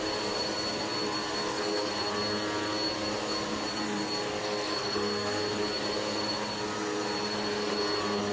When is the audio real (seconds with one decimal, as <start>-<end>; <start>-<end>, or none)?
0.0-1.4; 1.9-4.3; 5.4-8.3